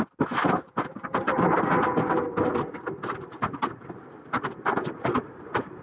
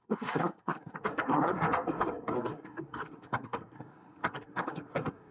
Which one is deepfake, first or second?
second